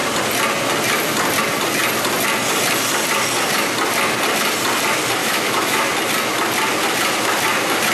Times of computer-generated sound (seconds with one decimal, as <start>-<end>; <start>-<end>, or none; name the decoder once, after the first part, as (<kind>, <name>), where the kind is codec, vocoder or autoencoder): 5.2-5.9 (autoencoder, DAC-VAE)